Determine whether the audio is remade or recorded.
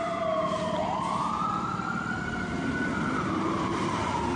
recorded